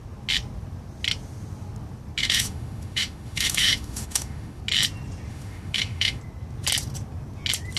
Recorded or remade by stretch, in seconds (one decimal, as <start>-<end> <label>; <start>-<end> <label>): 0.0-2.2 recorded; 2.2-4.6 remade; 4.6-5.3 recorded; 5.3-6.2 remade; 6.2-7.8 recorded